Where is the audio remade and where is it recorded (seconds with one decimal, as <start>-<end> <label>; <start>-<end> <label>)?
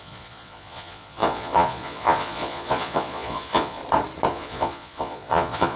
0.0-3.8 remade; 3.8-4.3 recorded; 4.3-5.8 remade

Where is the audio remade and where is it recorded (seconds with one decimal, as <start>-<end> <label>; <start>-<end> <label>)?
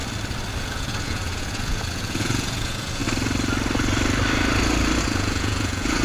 0.0-0.6 recorded; 0.6-3.0 remade; 3.0-5.0 recorded; 5.0-6.0 remade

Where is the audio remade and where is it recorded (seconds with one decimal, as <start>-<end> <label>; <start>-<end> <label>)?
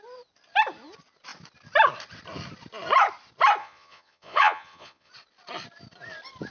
0.0-3.6 recorded; 3.6-5.1 remade; 5.1-6.5 recorded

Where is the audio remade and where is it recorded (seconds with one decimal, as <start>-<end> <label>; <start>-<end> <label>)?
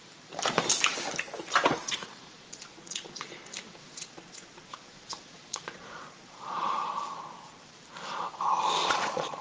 0.0-1.8 recorded; 1.8-3.3 remade; 3.3-3.8 recorded; 3.8-6.7 remade; 6.7-8.8 recorded; 8.8-9.4 remade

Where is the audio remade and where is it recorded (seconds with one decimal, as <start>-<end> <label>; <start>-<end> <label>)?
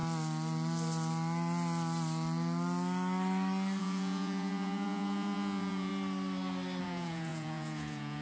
0.0-3.8 recorded; 3.8-5.9 remade; 5.9-6.8 recorded; 6.8-8.2 remade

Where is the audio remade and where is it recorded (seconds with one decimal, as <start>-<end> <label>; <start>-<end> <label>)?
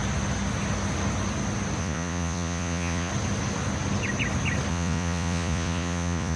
0.0-1.8 recorded; 1.8-3.1 remade; 3.1-4.7 recorded; 4.7-6.4 remade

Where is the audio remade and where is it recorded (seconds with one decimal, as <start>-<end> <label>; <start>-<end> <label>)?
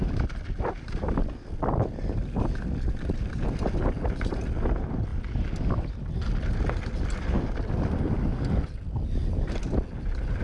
0.0-10.4 recorded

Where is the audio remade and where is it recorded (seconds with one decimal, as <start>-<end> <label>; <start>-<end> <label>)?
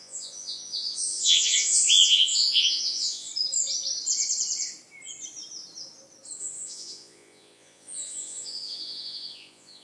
0.0-3.3 remade; 3.3-6.4 recorded; 6.4-9.8 remade